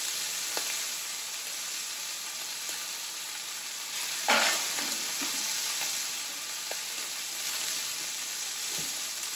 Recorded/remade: recorded